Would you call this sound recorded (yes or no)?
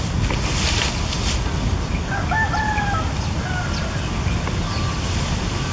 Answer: yes